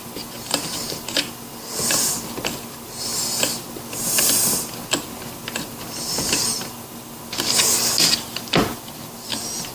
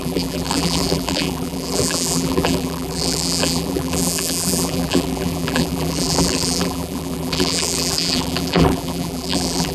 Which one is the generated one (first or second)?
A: second